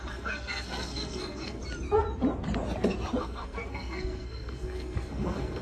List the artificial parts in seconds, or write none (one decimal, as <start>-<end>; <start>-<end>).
0.0-1.6; 3.2-5.6